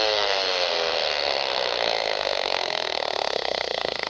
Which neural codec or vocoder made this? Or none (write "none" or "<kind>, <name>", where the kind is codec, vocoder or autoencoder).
codec, SNAC